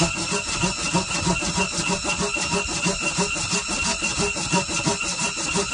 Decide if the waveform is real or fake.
real